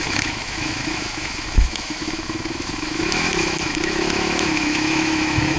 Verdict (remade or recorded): remade